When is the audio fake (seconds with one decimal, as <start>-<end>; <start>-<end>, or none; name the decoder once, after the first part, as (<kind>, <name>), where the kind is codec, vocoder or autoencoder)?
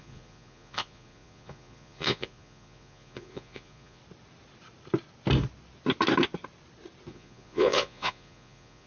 0.0-4.0 (vocoder, Vocos); 7.1-8.9